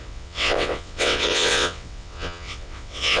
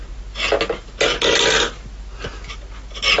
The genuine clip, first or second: second